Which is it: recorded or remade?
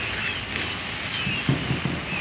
recorded